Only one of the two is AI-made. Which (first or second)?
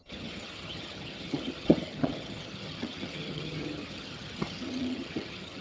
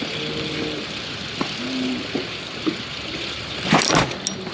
first